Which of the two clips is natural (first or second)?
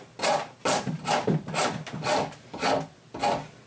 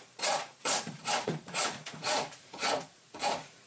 first